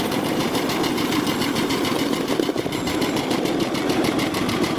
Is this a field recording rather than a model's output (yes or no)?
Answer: no